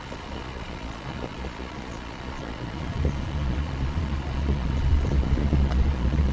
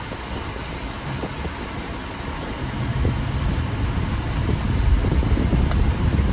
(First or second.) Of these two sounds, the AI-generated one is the first